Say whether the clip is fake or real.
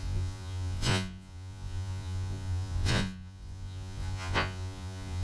fake